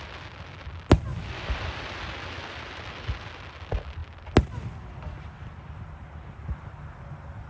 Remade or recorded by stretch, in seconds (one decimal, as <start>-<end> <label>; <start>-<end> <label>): 0.0-7.5 recorded